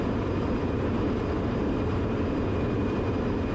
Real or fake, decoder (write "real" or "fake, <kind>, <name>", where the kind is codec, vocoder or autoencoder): fake, vocoder, BigVGAN v2